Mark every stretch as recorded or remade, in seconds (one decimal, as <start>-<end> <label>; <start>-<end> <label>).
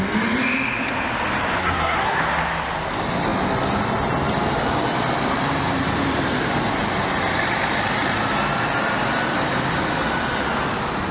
0.0-1.6 recorded; 1.6-2.2 remade; 2.2-11.1 recorded